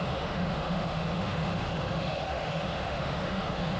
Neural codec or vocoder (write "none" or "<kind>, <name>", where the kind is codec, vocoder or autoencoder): autoencoder, DAC-VAE